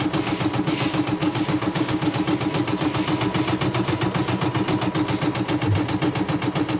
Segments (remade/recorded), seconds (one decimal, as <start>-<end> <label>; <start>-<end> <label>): 0.0-1.2 recorded; 1.2-2.1 remade; 2.1-6.8 recorded